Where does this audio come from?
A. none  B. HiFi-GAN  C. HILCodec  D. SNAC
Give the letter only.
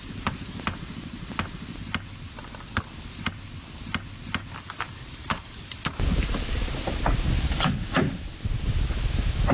A